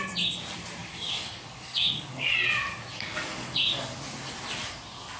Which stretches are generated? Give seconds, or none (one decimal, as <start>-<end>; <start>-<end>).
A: 0.8-2.3; 2.9-4.0